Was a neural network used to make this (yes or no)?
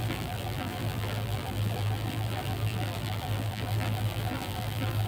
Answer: yes